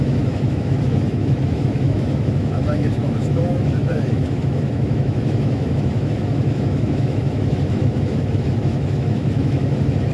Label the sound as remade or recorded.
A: remade